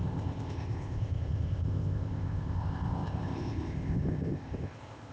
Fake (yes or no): yes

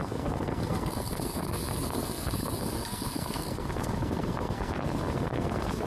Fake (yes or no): yes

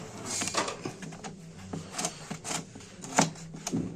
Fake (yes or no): no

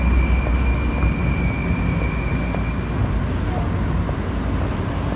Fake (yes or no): no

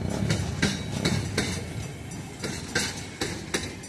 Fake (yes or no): no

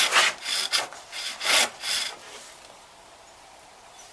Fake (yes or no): no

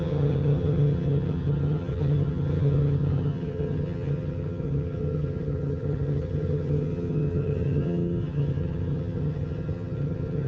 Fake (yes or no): yes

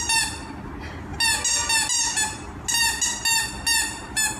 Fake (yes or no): no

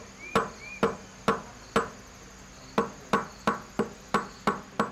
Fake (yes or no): no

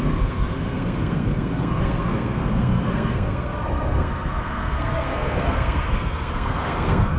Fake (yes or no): yes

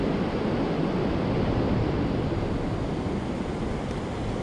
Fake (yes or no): no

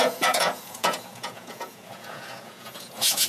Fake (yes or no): yes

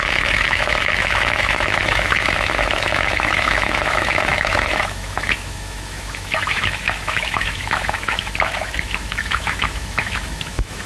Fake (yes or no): yes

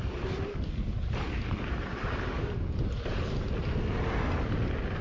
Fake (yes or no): no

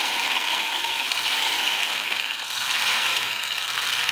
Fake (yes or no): yes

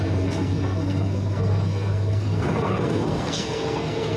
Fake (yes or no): yes